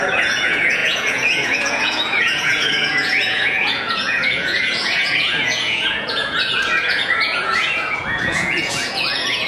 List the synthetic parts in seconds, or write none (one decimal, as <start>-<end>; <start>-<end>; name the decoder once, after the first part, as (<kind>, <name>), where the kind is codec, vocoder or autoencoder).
0.0-9.5 (vocoder, Vocos)